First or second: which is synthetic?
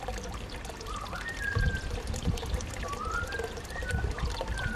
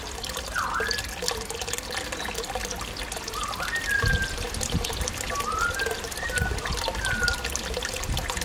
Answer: first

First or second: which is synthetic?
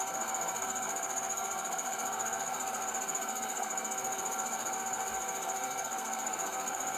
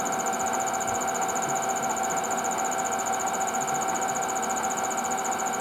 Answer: first